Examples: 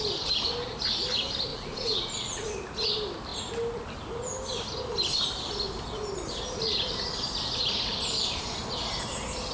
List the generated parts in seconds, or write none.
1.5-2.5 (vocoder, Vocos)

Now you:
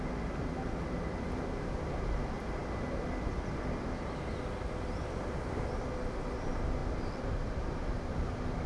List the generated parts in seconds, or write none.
none

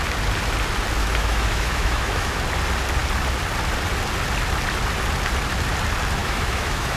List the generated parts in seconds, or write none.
1.0-2.4 (autoencoder, DAC-VAE); 6.2-7.0

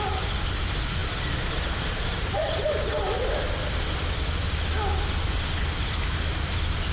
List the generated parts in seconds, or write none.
1.0-2.8 (vocoder, BigVGAN v2)

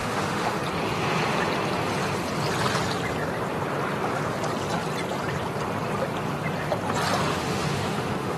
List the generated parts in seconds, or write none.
0.0-0.6 (autoencoder, DAC-VAE); 7.3-8.4

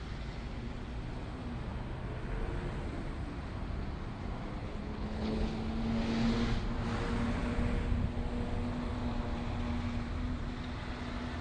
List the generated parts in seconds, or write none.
4.6-5.5 (codec, HILCodec)

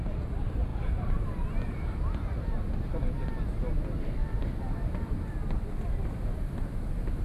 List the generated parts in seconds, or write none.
0.7-3.0 (vocoder, BigVGAN v2); 4.2-6.8